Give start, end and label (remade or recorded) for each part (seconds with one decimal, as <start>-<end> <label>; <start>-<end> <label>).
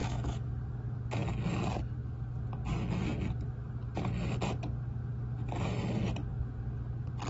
0.0-0.5 remade; 0.5-7.3 recorded